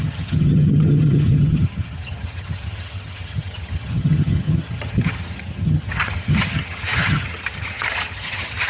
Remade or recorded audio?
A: remade